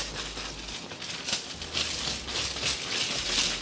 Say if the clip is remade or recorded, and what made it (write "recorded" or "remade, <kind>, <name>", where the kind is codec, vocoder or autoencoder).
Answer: recorded